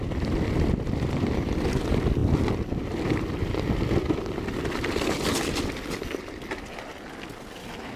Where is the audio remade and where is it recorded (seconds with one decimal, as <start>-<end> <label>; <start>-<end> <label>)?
0.0-8.0 recorded